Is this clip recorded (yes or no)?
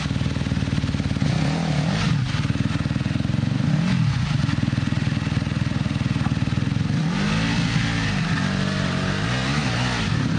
yes